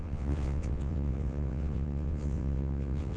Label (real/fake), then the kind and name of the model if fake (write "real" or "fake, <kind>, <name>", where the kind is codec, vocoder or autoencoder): fake, vocoder, WaveNeXt